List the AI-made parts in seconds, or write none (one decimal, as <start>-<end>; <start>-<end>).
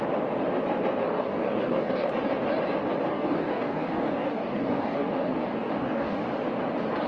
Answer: 1.0-2.1; 3.1-6.2